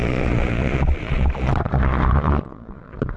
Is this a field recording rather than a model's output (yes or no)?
no